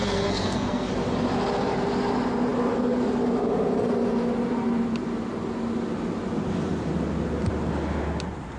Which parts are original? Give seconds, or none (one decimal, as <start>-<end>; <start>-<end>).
0.9-8.6